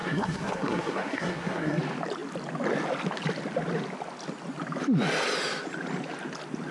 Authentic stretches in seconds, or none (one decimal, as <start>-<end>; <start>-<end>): 1.8-6.7